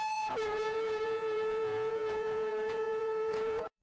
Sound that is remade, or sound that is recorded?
remade